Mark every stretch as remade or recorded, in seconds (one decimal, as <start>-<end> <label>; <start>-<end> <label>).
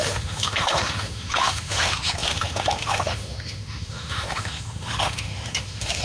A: 0.0-6.0 remade